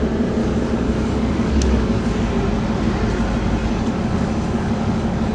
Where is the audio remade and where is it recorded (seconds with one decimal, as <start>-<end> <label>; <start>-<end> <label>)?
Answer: 0.0-0.4 recorded; 0.4-2.3 remade; 2.3-3.6 recorded; 3.6-5.3 remade